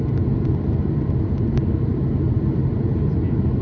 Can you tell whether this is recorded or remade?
recorded